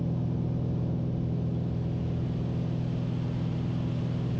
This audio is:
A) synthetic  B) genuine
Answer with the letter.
B